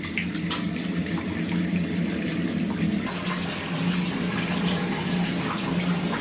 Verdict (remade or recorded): recorded